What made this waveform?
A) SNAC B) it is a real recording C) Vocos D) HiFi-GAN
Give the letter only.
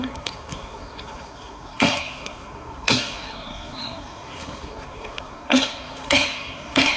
A